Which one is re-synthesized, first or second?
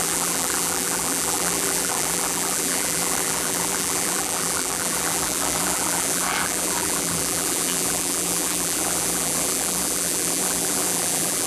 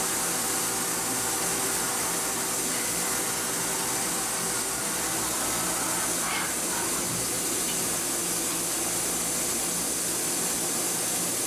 first